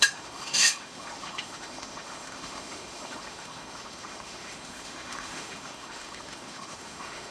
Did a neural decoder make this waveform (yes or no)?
yes